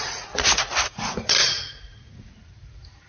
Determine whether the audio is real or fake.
fake